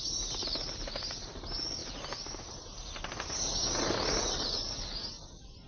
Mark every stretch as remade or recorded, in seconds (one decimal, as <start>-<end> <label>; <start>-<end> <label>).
0.0-5.7 recorded